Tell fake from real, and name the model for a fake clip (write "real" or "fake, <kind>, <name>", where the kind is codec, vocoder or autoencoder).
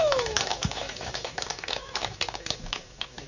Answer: fake, autoencoder, DAC-VAE